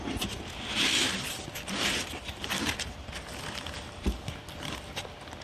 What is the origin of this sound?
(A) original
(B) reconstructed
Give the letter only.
A